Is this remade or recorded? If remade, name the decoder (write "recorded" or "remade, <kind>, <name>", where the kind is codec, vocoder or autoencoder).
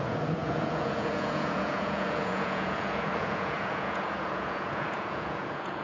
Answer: remade, vocoder, Vocos